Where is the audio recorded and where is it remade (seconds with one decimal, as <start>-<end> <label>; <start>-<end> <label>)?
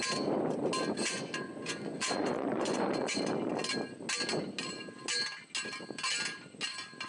0.0-1.0 recorded; 1.0-3.2 remade; 3.2-7.1 recorded